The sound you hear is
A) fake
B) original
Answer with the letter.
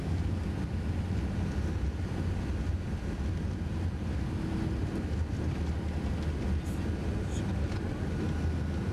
B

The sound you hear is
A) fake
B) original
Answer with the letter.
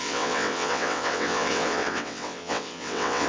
A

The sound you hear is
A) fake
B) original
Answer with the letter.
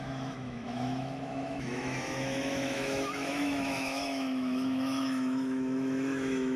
A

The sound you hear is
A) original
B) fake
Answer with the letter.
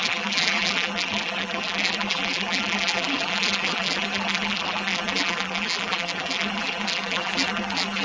B